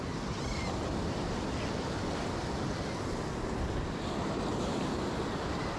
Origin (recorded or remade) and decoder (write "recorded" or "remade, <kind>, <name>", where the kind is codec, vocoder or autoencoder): recorded